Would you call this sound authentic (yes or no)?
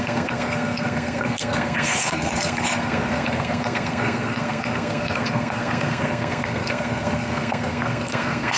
no